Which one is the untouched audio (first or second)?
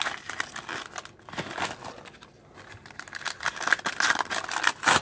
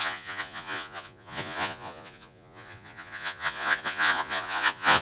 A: first